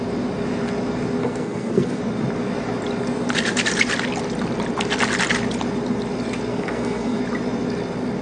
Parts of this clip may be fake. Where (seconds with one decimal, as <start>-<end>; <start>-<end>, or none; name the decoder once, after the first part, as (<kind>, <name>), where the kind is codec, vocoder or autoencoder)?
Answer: 1.2-2.0 (codec, SNAC); 6.5-7.2